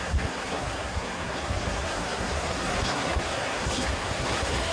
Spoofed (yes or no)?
yes